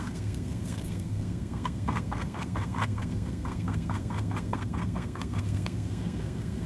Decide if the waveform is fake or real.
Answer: fake